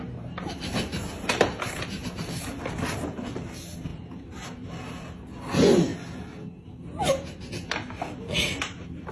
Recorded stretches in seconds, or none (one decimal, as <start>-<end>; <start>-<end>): 0.0-0.9; 1.6-9.1